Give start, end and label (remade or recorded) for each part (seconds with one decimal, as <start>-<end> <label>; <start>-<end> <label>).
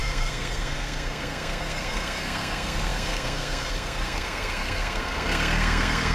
0.0-6.1 remade